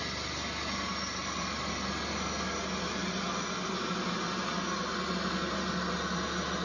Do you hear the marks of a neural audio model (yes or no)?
no